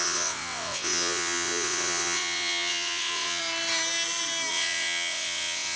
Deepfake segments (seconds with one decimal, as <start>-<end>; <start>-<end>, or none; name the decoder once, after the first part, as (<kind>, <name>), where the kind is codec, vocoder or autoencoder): 0.0-3.4 (vocoder, WaveNeXt); 4.5-5.8